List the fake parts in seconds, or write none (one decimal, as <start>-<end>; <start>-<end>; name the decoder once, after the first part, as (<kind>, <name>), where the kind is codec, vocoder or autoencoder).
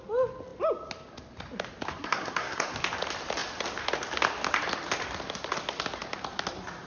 1.9-2.7 (codec, SNAC)